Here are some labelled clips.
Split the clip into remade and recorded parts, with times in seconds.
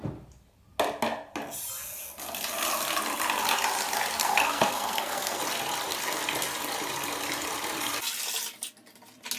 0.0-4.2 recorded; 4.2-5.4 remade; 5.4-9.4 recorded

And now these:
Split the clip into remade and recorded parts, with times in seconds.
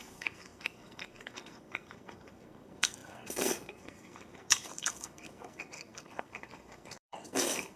0.0-7.8 remade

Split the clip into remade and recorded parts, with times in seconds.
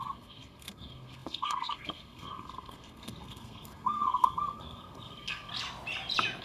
0.0-5.5 remade; 5.5-6.4 recorded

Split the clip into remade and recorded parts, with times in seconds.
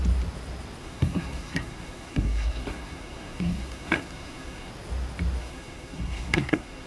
0.0-0.8 recorded; 0.8-4.7 remade; 4.7-5.4 recorded; 5.4-6.9 remade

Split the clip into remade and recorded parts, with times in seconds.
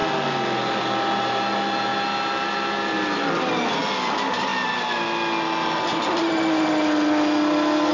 0.0-7.9 recorded